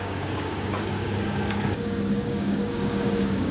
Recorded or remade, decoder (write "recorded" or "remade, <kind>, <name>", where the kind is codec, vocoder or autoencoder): remade, codec, DAC